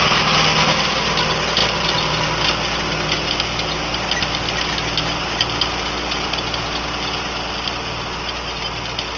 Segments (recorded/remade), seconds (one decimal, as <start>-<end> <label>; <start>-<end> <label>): 0.0-9.2 recorded